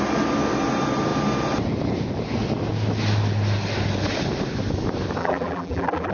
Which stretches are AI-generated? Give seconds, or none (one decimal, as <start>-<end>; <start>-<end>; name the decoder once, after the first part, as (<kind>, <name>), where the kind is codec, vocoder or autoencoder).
5.2-6.1 (vocoder, BigVGAN v2)